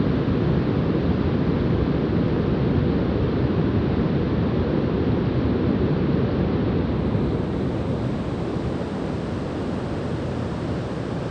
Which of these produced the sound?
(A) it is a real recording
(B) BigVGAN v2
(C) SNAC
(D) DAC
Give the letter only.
A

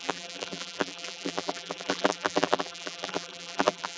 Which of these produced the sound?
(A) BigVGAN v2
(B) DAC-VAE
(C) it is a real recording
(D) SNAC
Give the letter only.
A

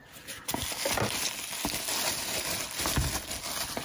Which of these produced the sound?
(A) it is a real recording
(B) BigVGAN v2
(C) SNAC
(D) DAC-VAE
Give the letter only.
A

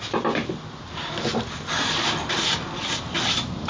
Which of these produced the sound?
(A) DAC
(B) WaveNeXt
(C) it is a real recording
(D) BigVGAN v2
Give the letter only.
C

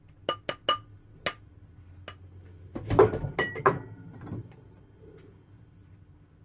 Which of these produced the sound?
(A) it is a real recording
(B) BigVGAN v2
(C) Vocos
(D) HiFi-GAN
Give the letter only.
A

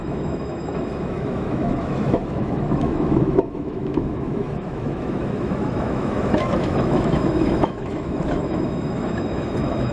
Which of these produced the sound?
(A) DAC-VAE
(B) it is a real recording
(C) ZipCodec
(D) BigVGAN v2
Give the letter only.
A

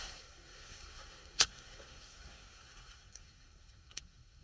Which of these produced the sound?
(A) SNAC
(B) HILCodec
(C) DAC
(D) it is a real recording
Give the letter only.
A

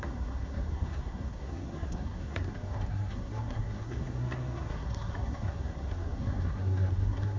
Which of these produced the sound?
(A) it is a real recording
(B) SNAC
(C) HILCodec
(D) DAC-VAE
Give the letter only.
B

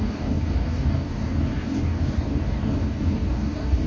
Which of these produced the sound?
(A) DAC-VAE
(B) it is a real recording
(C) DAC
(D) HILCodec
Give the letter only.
C